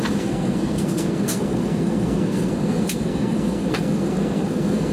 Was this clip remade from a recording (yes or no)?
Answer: yes